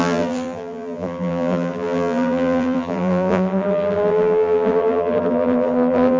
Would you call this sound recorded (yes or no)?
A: no